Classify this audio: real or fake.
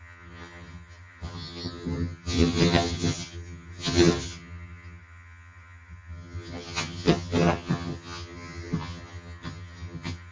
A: fake